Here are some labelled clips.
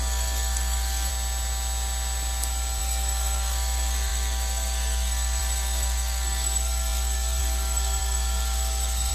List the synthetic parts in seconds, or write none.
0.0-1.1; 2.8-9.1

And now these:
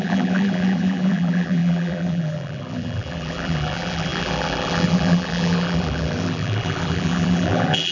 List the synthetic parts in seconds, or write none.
0.0-7.9